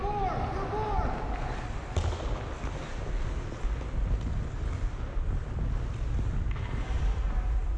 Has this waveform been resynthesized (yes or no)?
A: no